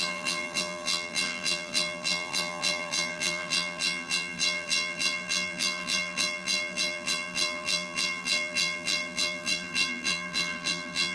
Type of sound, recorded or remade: remade